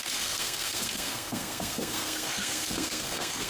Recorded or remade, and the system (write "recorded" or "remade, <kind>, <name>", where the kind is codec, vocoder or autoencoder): remade, codec, SNAC